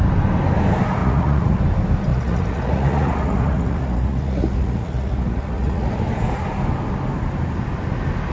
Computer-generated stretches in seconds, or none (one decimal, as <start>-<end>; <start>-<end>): 1.0-1.6; 2.1-5.9